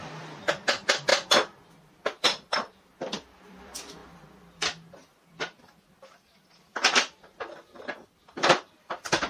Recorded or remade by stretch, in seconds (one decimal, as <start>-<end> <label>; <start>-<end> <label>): 0.0-1.1 remade; 1.1-1.8 recorded; 1.8-9.3 remade